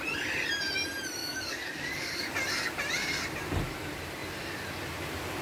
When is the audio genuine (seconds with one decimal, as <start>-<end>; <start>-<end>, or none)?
0.0-1.2; 2.3-5.4